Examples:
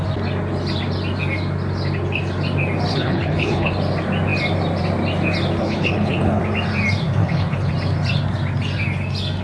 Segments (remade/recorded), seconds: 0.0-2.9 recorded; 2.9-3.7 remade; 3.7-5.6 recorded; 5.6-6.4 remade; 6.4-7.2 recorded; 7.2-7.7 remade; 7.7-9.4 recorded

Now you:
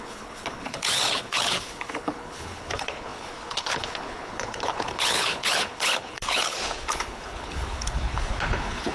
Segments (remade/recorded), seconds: 0.0-8.9 remade

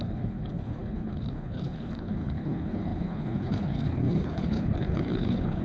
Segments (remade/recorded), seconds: 0.0-5.6 remade

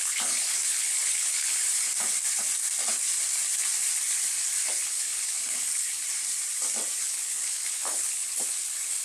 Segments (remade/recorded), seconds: 0.0-1.9 remade; 1.9-4.8 recorded; 4.8-6.1 remade; 6.1-7.0 recorded; 7.0-9.0 remade

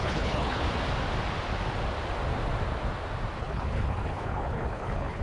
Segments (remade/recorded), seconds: 0.0-0.6 remade; 0.6-3.4 recorded; 3.4-5.2 remade

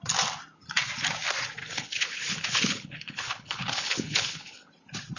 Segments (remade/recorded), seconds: 0.0-1.6 recorded; 1.6-4.7 remade; 4.7-5.2 recorded